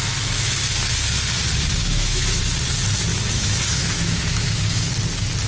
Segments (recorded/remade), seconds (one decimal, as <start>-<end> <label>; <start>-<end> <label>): 0.0-1.8 recorded; 1.8-2.4 remade; 2.4-3.1 recorded; 3.1-4.9 remade; 4.9-5.5 recorded